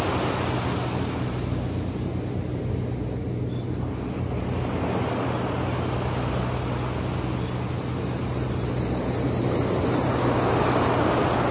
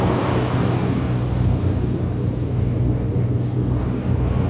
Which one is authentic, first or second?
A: first